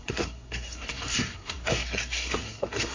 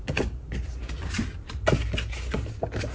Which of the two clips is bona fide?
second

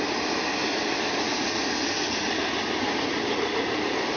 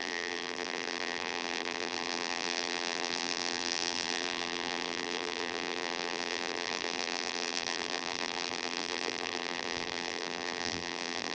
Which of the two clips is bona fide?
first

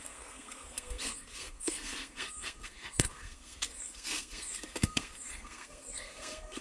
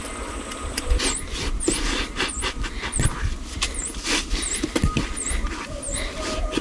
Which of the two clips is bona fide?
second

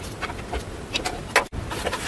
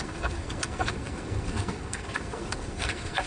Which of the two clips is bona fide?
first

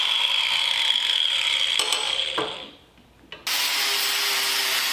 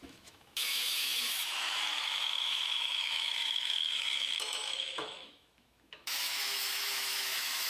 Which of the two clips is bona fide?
first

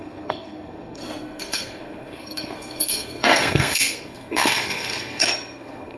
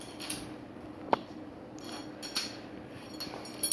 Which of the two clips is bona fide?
second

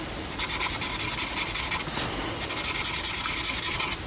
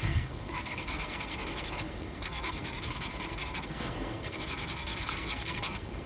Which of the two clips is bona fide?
first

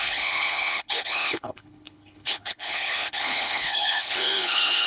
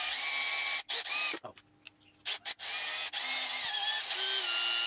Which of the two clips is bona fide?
second